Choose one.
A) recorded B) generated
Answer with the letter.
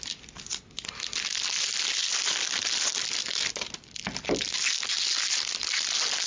A